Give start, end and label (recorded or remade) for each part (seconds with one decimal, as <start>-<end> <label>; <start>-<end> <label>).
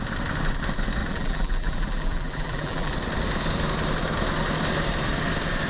0.0-1.0 recorded; 1.0-2.9 remade; 2.9-5.7 recorded